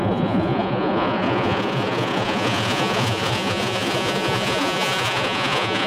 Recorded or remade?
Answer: remade